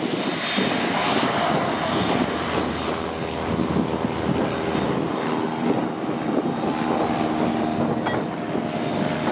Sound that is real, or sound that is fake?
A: real